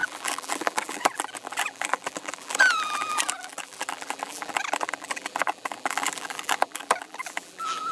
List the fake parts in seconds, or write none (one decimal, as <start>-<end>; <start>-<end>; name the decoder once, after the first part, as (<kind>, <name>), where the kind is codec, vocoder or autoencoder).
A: 0.0-7.9 (vocoder, BigVGAN v2)